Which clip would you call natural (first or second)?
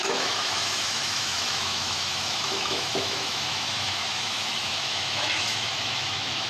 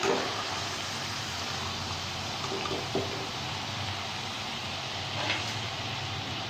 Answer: second